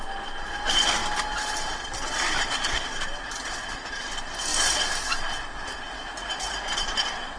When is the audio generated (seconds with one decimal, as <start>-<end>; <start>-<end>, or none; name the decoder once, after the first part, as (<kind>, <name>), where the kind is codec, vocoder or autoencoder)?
none